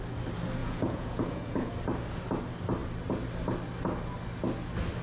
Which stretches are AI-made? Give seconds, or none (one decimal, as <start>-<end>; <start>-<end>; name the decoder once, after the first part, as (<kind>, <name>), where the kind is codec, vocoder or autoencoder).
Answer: 0.6-1.7 (vocoder, Vocos)